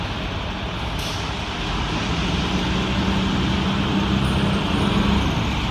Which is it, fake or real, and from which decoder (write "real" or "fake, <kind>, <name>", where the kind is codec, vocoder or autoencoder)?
real